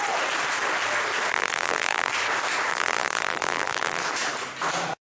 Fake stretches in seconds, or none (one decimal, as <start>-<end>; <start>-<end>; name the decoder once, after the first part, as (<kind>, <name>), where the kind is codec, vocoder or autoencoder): 1.3-2.1 (vocoder, BigVGAN v2); 2.7-4.0